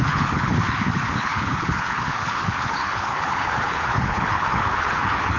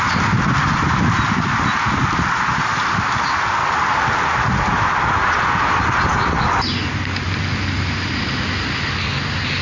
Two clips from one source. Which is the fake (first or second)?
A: first